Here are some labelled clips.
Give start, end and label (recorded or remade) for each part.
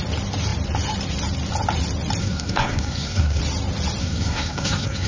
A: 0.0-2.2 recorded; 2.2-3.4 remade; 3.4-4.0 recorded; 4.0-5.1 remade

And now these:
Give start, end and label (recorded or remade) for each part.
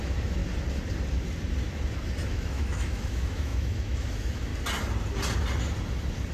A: 0.0-0.4 remade; 0.4-2.3 recorded; 2.3-4.5 remade; 4.5-6.3 recorded